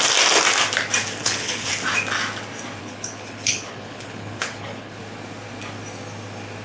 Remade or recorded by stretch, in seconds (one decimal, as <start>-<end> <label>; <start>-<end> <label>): 0.0-1.2 recorded; 1.2-1.7 remade; 1.7-2.8 recorded; 2.8-5.0 remade; 5.0-6.6 recorded